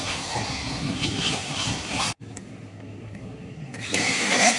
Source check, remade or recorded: remade